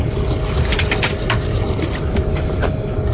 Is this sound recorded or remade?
recorded